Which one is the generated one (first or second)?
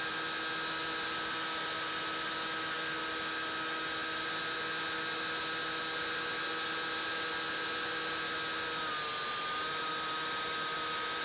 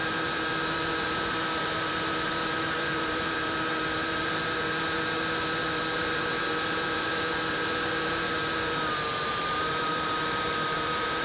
second